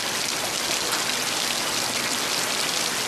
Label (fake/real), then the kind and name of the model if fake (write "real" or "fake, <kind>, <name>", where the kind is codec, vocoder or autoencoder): real